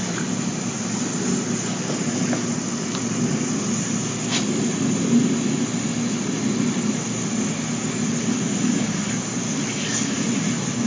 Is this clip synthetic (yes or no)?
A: no